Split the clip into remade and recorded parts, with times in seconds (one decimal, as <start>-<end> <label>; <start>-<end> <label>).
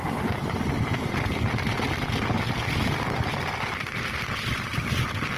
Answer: 0.0-5.4 recorded